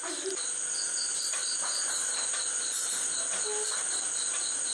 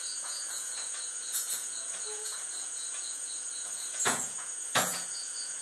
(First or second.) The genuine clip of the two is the first